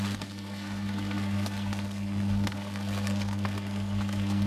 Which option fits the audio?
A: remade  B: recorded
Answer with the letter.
A